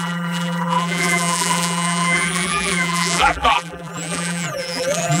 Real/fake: fake